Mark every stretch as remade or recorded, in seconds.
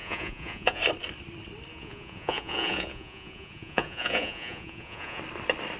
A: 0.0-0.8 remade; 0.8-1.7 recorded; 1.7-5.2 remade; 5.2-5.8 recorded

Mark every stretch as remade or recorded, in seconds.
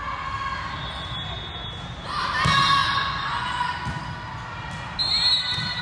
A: 0.0-2.8 recorded; 2.8-3.7 remade; 3.7-5.8 recorded